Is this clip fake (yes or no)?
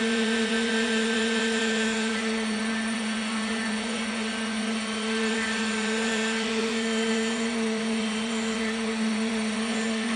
yes